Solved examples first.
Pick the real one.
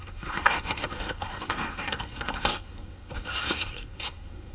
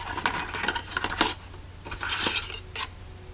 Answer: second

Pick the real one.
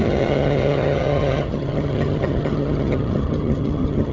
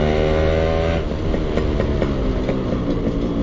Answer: second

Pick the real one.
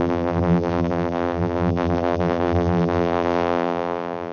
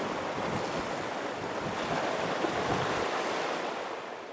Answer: second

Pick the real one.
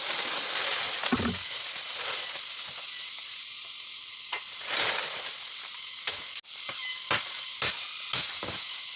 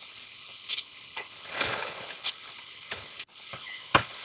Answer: first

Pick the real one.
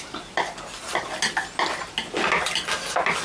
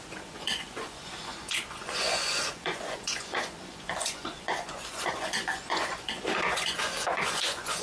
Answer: first